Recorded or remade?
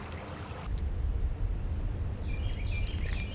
recorded